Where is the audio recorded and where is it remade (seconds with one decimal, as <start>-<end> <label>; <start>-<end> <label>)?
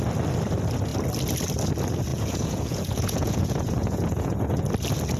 0.0-2.1 recorded; 2.1-4.7 remade; 4.7-5.2 recorded